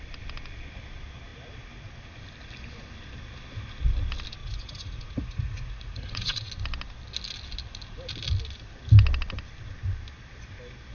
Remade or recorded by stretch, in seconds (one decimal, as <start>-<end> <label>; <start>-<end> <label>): 0.0-4.4 recorded; 4.4-6.5 remade; 6.5-10.9 recorded